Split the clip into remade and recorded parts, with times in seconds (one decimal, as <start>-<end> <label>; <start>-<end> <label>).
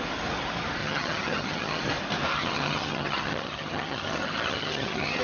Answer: 0.0-0.8 recorded; 0.8-1.8 remade; 1.8-2.3 recorded; 2.3-5.2 remade